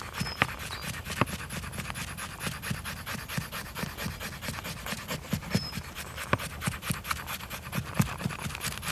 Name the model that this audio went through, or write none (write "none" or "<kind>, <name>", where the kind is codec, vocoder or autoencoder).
none